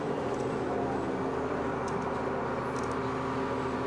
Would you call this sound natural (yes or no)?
yes